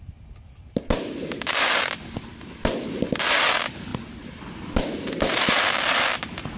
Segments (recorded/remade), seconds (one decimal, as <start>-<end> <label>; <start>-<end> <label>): 0.0-6.6 recorded